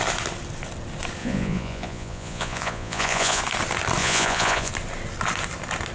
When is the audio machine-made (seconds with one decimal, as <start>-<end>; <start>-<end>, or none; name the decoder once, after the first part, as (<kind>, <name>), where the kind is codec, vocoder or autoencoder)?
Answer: 1.2-3.4 (vocoder, Vocos); 4.0-4.7